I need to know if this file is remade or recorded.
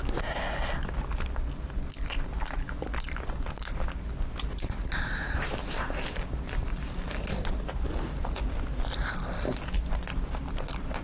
recorded